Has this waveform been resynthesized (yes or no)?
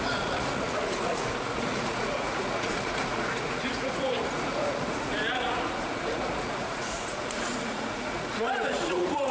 yes